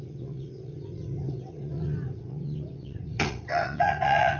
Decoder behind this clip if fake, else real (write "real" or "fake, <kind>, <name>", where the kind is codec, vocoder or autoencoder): fake, vocoder, WaveNeXt